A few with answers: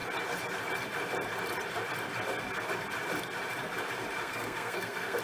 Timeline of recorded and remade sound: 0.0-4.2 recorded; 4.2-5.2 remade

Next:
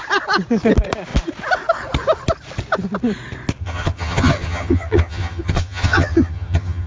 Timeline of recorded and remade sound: 0.0-3.6 recorded; 3.6-6.9 remade

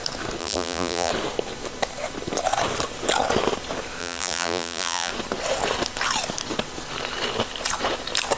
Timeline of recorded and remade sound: 0.0-0.4 recorded; 0.4-1.1 remade; 1.1-4.0 recorded; 4.0-5.1 remade; 5.1-8.4 recorded

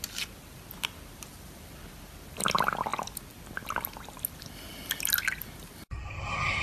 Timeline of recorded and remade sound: 0.0-6.6 remade

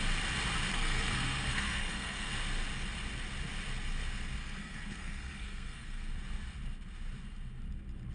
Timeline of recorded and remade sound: 0.0-0.7 recorded; 0.7-2.3 remade; 2.3-4.4 recorded; 4.4-6.1 remade; 6.1-8.1 recorded